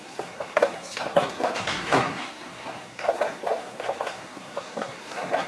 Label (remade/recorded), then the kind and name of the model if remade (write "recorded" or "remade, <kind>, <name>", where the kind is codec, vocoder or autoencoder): remade, codec, SNAC